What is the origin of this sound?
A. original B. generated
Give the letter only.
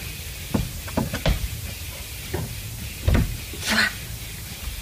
A